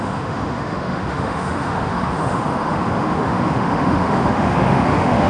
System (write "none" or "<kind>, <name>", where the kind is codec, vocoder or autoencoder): autoencoder, DAC-VAE